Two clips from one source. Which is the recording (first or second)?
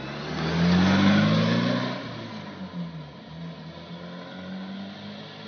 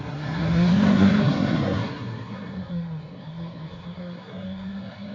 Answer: first